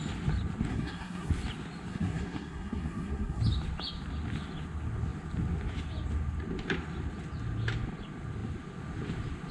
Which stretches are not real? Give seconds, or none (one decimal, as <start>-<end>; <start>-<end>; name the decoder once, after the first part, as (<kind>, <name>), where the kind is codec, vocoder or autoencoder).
0.7-1.3 (codec, SNAC); 1.9-3.4